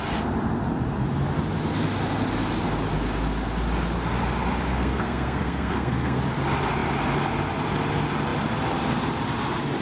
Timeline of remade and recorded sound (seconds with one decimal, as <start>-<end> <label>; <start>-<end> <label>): 0.0-4.7 recorded; 4.7-6.2 remade; 6.2-9.8 recorded